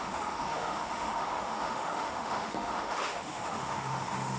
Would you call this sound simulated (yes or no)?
yes